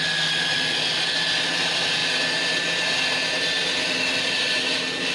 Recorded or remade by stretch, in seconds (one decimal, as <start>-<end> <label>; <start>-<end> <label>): 0.0-5.1 recorded